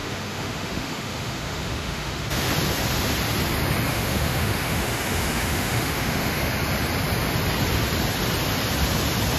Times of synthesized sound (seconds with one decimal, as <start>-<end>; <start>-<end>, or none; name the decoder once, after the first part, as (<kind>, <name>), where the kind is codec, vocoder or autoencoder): 0.0-2.5 (autoencoder, DAC-VAE); 3.9-6.5